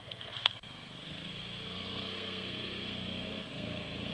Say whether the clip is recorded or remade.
remade